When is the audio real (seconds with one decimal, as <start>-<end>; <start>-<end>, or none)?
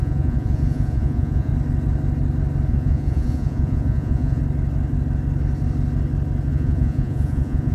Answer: 1.5-2.7; 4.4-6.5